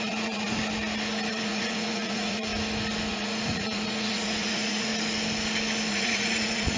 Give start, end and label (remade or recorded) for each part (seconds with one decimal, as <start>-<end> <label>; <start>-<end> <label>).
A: 0.0-0.6 remade; 0.6-1.3 recorded; 1.3-2.5 remade; 2.5-3.1 recorded; 3.1-4.9 remade; 4.9-5.9 recorded; 5.9-6.8 remade